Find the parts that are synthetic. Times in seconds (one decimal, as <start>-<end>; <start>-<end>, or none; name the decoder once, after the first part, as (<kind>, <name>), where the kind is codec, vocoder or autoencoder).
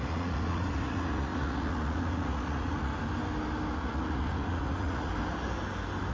0.0-2.9 (vocoder, Vocos); 3.8-5.1